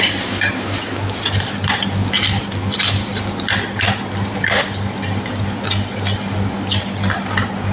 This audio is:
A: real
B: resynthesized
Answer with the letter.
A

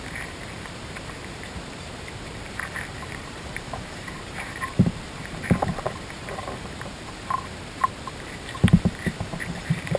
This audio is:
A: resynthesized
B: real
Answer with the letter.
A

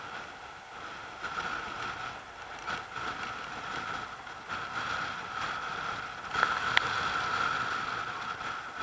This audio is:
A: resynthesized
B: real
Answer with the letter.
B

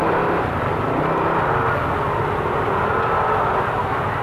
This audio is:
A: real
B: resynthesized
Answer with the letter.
A